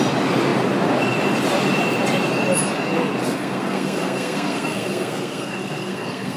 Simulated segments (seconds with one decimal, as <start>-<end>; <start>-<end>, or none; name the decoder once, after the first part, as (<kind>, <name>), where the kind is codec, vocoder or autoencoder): 3.2-6.4 (codec, SNAC)